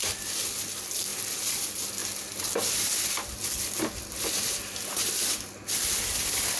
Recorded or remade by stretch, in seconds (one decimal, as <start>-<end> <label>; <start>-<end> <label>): 0.0-6.6 recorded